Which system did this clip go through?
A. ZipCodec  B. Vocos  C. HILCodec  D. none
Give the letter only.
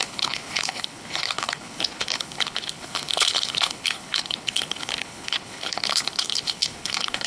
C